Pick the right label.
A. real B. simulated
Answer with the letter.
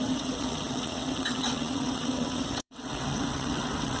B